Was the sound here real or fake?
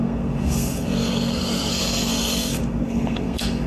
fake